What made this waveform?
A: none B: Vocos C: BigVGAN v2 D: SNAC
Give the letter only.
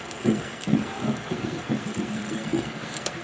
D